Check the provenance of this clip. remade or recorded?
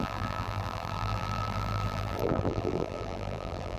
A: remade